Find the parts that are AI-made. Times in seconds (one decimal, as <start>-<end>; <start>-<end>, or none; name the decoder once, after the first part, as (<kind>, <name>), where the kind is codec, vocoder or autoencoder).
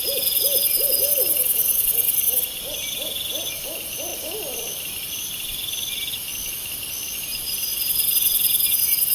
0.0-1.9 (vocoder, BigVGAN v2); 2.9-6.3; 8.1-9.1